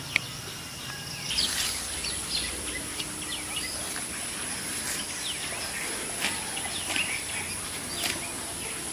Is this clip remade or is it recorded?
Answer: recorded